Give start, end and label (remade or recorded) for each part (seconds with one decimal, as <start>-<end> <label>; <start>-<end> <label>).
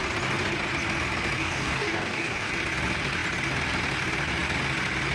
0.0-1.4 recorded; 1.4-2.5 remade; 2.5-5.1 recorded